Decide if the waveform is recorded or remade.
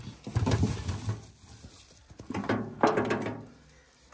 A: recorded